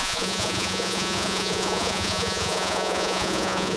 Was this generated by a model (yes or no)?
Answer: yes